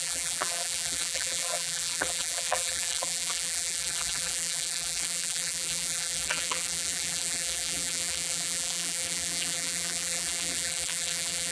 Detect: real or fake fake